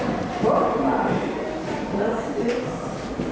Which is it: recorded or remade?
recorded